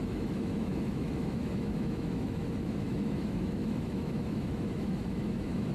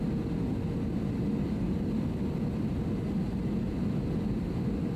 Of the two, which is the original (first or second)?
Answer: second